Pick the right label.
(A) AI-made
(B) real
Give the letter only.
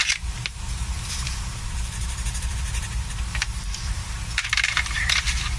A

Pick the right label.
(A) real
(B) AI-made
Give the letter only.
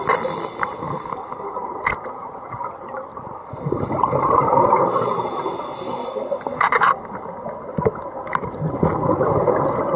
A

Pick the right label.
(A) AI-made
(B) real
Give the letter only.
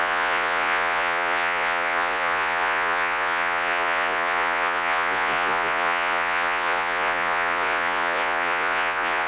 A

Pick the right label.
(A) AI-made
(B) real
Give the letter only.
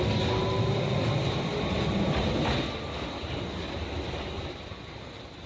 B